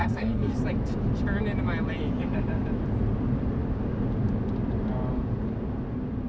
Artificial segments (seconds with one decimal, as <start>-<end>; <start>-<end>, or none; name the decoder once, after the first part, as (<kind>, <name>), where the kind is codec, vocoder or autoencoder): 0.0-0.5 (codec, SNAC)